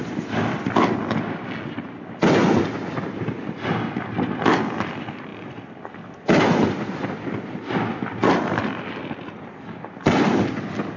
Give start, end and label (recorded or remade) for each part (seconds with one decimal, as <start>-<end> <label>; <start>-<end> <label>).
0.0-11.0 recorded